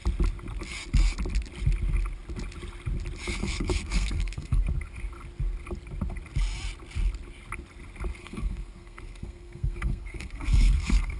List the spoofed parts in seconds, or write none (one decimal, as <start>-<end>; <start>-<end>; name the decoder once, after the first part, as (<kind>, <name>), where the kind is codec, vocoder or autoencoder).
3.4-4.6 (codec, SNAC); 8.2-11.2